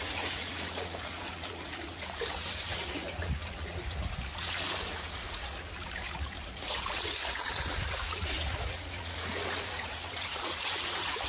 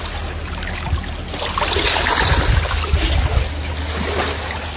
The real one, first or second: second